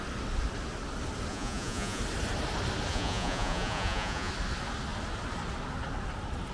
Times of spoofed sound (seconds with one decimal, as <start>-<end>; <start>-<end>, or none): 1.3-2.0; 2.9-4.3